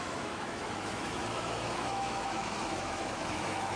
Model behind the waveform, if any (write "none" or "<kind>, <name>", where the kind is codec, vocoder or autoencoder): autoencoder, DAC-VAE